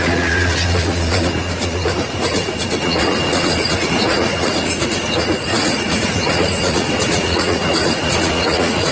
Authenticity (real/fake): fake